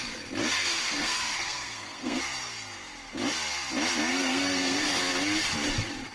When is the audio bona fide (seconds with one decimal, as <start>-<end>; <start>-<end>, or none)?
0.0-0.5; 2.2-4.1; 5.0-6.1